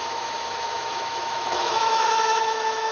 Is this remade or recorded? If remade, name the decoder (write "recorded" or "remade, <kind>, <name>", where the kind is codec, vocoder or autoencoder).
remade, autoencoder, DAC-VAE